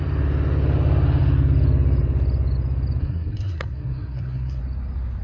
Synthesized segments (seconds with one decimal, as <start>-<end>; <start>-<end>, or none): 3.0-4.6